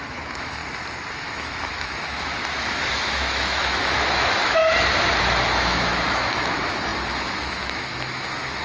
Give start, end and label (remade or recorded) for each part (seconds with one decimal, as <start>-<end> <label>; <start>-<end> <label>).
0.0-0.6 remade; 0.6-1.1 recorded; 1.1-4.6 remade; 4.6-5.2 recorded; 5.2-8.6 remade

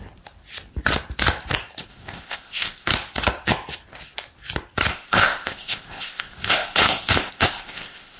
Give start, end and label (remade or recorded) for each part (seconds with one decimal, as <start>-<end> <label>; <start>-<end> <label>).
0.0-1.9 recorded; 1.9-2.9 remade; 2.9-4.9 recorded; 4.9-8.2 remade

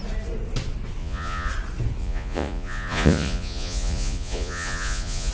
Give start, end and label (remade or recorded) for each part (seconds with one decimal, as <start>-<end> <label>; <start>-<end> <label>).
0.0-1.0 recorded; 1.0-1.5 remade; 1.5-2.0 recorded; 2.0-5.3 remade

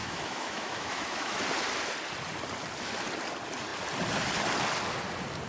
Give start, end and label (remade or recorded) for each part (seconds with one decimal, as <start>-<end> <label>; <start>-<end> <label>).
0.0-1.4 remade; 1.4-5.5 recorded

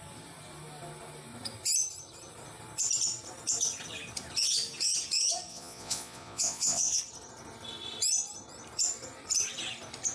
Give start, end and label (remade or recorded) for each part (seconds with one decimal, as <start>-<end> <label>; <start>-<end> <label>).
0.0-5.5 recorded; 5.5-7.0 remade; 7.0-10.1 recorded

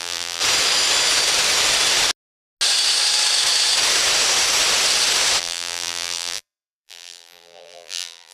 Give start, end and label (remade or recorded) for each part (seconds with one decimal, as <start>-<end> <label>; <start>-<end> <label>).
0.0-0.4 remade; 0.4-5.4 recorded; 5.4-8.3 remade

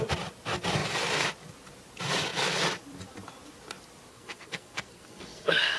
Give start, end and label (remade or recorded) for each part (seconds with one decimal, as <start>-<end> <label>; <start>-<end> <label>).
0.0-4.1 recorded; 4.1-5.8 remade

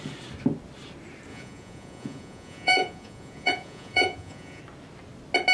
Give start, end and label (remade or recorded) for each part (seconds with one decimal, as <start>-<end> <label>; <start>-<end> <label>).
0.0-1.3 recorded; 1.3-4.6 remade; 4.6-5.5 recorded